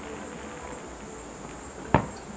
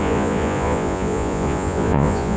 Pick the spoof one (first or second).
second